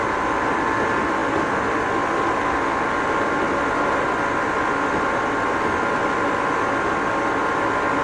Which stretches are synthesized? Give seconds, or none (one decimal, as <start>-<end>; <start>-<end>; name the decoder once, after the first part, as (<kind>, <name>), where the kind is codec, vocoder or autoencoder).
none